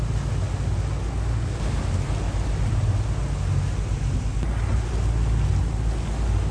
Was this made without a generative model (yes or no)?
yes